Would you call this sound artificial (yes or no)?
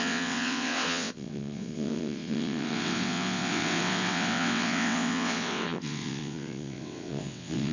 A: yes